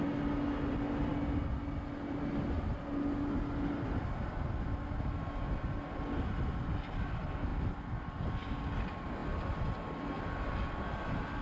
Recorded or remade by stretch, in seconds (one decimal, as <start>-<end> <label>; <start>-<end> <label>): 0.0-11.4 recorded